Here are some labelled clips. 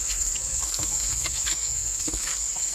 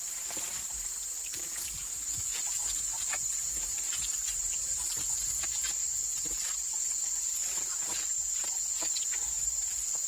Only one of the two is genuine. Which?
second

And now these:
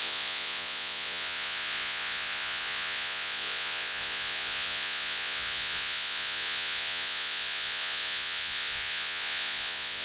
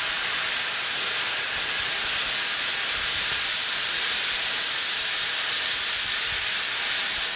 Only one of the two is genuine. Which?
second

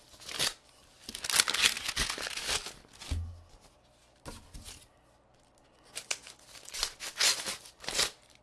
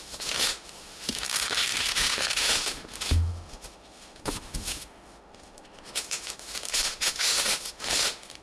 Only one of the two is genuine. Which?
first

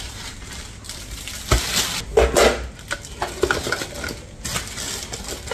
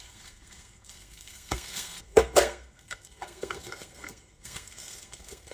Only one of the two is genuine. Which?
first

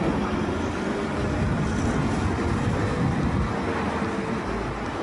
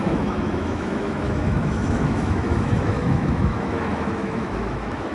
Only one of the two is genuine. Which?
first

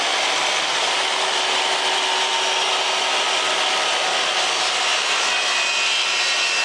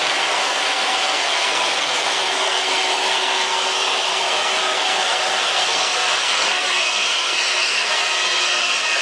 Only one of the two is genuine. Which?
first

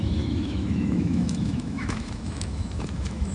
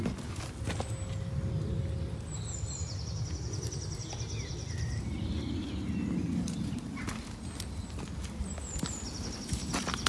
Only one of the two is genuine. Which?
second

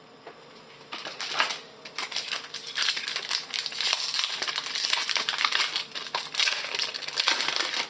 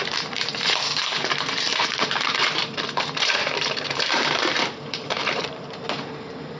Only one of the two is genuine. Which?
first